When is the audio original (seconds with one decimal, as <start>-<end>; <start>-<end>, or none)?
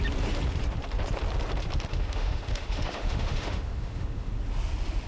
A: 0.0-1.9; 4.3-5.1